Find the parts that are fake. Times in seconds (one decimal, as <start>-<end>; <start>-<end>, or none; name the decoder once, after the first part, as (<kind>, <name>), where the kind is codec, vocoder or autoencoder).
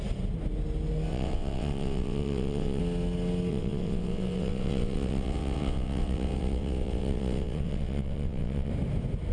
1.1-2.8 (vocoder, WaveNeXt); 3.5-8.7